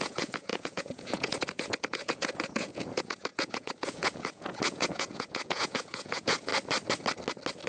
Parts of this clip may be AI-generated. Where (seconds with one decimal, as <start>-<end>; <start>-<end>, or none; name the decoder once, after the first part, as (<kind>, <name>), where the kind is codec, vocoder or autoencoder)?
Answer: 0.0-6.5 (vocoder, Vocos)